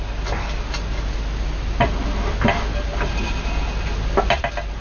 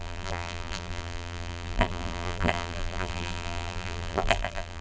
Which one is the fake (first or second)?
second